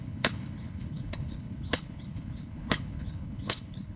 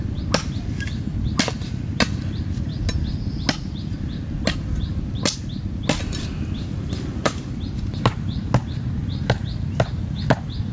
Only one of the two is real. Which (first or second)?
second